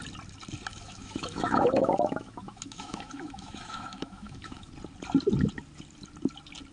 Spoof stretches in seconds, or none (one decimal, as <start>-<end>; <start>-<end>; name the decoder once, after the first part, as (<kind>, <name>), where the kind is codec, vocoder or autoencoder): 0.7-4.7 (autoencoder, DAC-VAE)